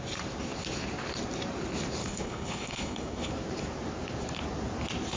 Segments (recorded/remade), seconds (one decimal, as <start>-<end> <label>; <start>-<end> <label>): 0.0-2.0 recorded; 2.0-3.3 remade; 3.3-5.2 recorded